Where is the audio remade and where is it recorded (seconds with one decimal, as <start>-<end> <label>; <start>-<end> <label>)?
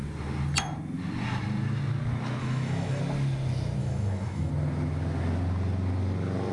0.0-2.4 recorded; 2.4-3.0 remade; 3.0-3.8 recorded; 3.8-4.5 remade; 4.5-6.5 recorded